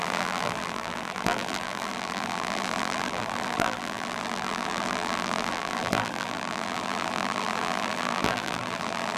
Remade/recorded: remade